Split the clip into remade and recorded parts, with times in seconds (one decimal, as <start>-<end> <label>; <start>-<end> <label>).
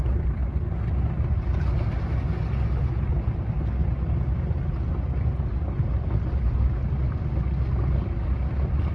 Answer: 0.0-8.9 recorded